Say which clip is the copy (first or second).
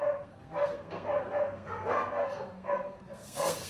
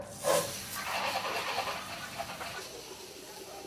first